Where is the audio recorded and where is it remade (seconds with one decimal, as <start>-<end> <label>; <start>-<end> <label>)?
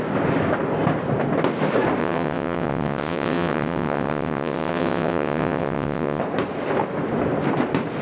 0.0-2.0 recorded; 2.0-6.2 remade; 6.2-8.0 recorded